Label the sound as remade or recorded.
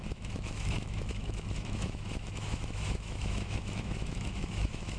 remade